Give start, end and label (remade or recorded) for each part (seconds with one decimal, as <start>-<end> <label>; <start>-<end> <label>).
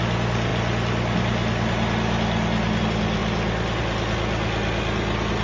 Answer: 0.0-5.4 recorded